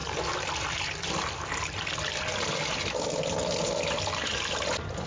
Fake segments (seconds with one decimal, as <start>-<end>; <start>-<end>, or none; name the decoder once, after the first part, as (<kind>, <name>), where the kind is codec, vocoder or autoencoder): none